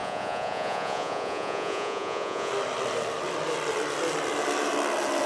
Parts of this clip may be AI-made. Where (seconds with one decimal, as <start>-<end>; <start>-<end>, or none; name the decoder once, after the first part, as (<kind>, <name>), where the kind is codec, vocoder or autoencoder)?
0.0-2.5 (vocoder, Vocos)